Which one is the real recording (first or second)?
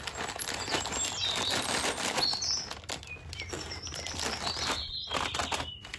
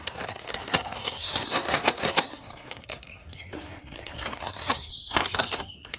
first